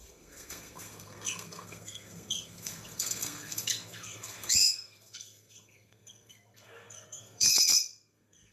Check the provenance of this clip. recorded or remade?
remade